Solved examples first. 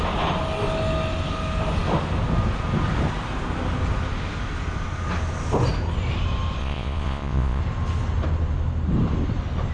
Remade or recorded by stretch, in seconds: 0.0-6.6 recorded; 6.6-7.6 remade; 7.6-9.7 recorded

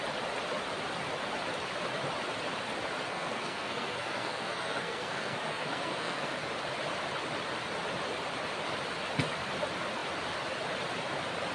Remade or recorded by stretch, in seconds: 0.0-3.1 recorded; 3.1-6.4 remade; 6.4-11.5 recorded